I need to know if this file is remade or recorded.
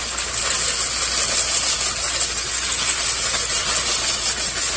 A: recorded